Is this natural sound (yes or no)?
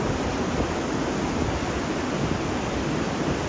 yes